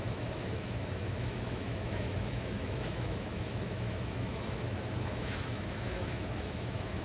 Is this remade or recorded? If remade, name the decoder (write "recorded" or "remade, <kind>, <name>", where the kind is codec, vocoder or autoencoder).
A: remade, autoencoder, DAC-VAE